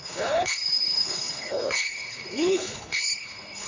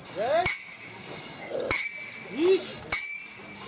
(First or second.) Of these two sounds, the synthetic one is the first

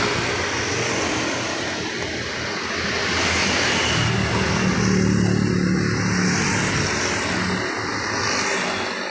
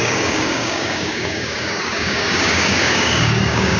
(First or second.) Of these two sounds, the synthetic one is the second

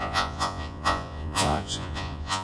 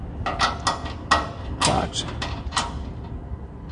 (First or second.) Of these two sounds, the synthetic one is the first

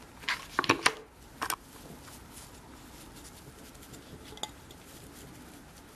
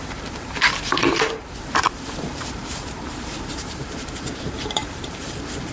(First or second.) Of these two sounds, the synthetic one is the second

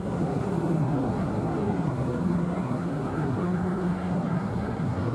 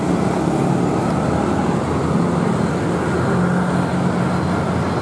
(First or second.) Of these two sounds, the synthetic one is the first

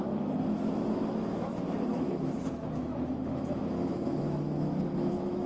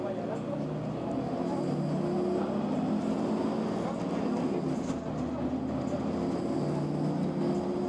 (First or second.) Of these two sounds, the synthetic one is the first